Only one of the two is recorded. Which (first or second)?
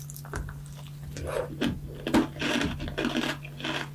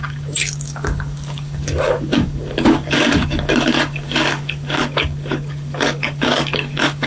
first